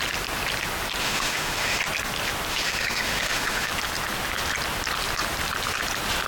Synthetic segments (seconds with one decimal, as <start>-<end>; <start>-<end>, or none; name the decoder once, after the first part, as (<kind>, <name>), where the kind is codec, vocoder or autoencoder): 1.0-1.8 (autoencoder, DAC-VAE); 2.5-3.7